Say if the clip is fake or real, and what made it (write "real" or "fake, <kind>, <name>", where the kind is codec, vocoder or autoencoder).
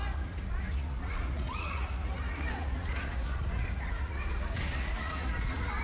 fake, vocoder, Vocos